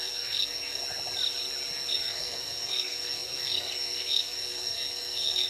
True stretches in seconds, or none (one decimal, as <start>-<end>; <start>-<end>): 0.8-1.9